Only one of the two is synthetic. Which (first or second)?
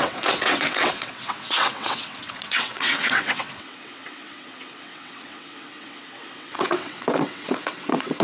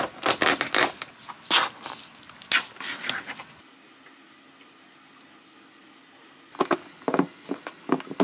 first